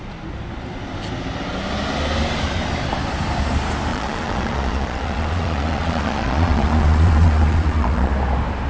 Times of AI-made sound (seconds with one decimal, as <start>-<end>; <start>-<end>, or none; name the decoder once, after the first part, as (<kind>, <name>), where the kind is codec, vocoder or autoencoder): 3.9-8.1 (vocoder, Vocos)